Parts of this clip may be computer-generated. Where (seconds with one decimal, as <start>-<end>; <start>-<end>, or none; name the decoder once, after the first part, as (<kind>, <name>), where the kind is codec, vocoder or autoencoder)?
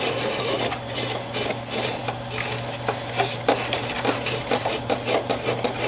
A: none